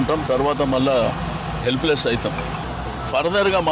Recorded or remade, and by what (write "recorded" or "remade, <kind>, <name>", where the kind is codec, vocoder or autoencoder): recorded